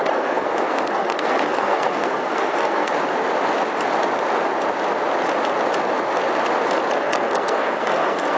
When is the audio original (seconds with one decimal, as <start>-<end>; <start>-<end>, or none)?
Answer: 2.9-7.0